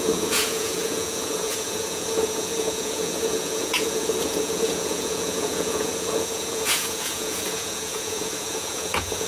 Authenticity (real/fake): fake